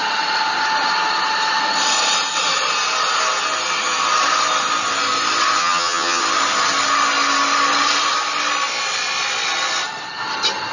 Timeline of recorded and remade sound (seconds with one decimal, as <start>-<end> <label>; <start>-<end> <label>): 0.0-5.6 recorded; 5.6-6.2 remade; 6.2-10.7 recorded